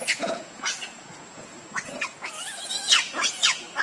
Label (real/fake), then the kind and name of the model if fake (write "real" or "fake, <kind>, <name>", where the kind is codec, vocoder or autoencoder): fake, vocoder, Vocos